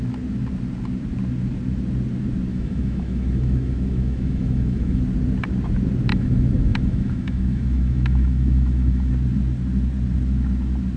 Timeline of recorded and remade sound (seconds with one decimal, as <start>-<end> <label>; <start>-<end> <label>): 0.0-2.5 recorded; 2.5-5.0 remade; 5.0-6.1 recorded; 6.1-9.1 remade; 9.1-11.0 recorded